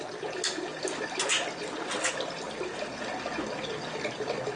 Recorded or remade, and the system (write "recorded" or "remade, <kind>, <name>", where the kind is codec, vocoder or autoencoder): recorded